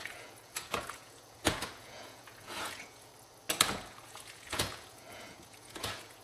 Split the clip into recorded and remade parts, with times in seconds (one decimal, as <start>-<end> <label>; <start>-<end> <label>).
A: 0.0-3.1 remade; 3.1-3.7 recorded; 3.7-6.2 remade